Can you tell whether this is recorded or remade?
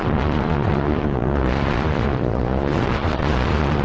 remade